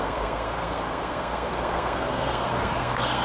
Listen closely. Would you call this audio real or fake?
fake